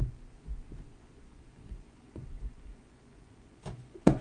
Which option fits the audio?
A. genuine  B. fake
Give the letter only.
B